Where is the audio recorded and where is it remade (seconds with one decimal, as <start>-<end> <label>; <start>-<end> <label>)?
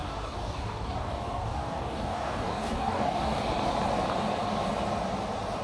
0.0-3.4 remade; 3.4-5.6 recorded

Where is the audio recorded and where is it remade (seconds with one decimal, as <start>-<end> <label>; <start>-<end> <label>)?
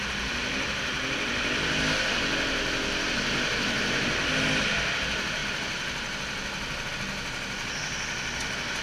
0.0-8.8 recorded